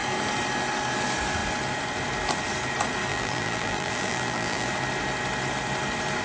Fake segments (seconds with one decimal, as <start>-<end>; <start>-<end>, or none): 3.1-4.7